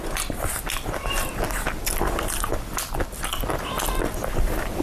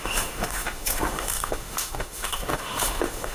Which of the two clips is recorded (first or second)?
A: first